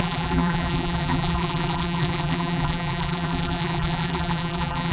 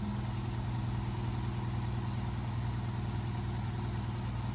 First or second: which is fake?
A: first